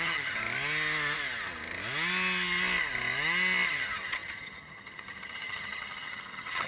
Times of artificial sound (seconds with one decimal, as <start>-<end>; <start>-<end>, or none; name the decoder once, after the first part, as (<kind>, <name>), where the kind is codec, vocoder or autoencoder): 0.0-0.4 (vocoder, HiFi-GAN); 3.7-6.7